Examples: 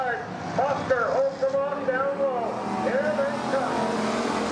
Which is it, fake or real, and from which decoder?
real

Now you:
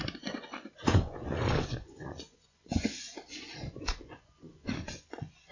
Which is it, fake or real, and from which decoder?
fake, vocoder, Vocos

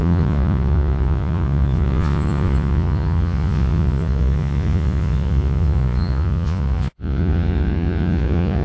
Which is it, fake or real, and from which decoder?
fake, vocoder, Vocos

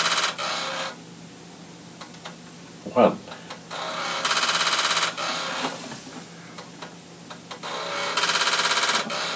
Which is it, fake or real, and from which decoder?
real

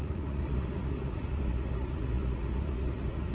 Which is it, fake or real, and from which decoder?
fake, vocoder, Vocos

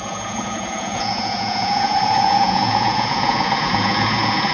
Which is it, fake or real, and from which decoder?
fake, vocoder, Vocos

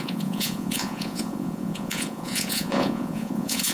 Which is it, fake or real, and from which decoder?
fake, vocoder, Vocos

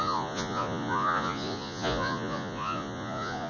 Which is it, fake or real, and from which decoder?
fake, vocoder, Vocos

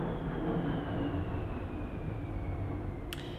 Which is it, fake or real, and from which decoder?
real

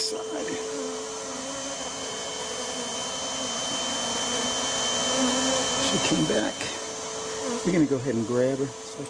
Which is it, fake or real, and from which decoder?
real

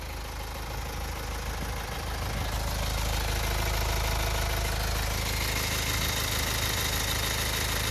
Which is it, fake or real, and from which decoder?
real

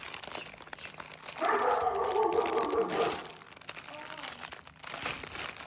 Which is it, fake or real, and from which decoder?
real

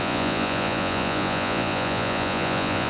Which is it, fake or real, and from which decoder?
fake, vocoder, Vocos